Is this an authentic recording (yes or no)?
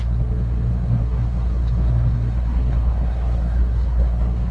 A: no